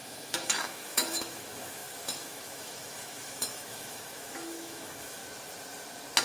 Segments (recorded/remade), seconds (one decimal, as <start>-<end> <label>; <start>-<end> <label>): 0.0-5.2 remade; 5.2-6.2 recorded